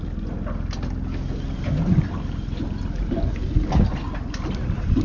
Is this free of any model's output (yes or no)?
yes